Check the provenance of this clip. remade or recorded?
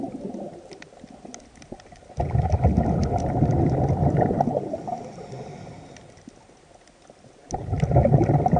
recorded